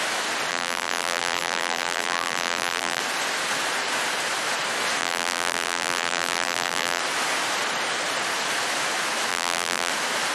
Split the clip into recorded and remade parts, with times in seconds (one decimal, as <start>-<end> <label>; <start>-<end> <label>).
0.0-0.5 recorded; 0.5-3.0 remade; 3.0-5.0 recorded; 5.0-7.0 remade; 7.0-9.3 recorded; 9.3-9.9 remade; 9.9-10.3 recorded